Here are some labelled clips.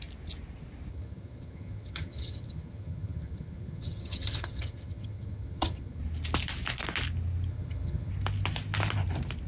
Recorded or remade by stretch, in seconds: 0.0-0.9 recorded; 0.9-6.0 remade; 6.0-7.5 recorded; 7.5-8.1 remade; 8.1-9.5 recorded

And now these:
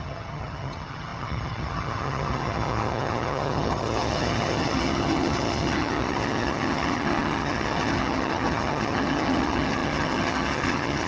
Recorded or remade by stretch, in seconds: 0.0-11.1 remade

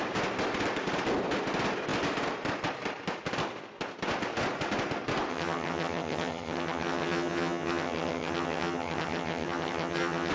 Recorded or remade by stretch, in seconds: 0.0-5.3 recorded; 5.3-10.3 remade

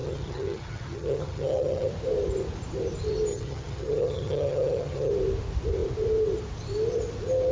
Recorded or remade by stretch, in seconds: 0.0-1.9 remade; 1.9-3.3 recorded; 3.3-5.1 remade; 5.1-7.5 recorded

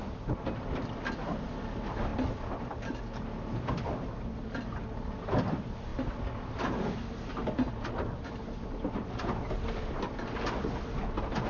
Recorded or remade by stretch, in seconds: 0.0-11.5 recorded

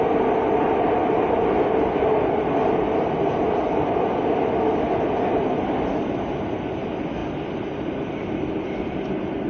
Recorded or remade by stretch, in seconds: 0.0-9.5 recorded

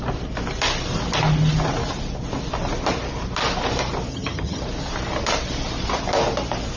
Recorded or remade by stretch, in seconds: 0.0-4.1 recorded; 4.1-4.6 remade; 4.6-6.8 recorded

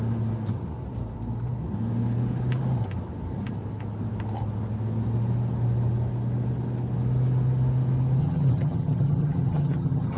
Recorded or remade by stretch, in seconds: 0.0-8.2 recorded; 8.2-10.2 remade